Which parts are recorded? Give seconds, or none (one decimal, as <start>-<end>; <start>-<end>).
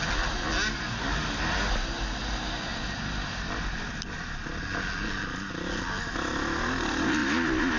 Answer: 0.0-7.8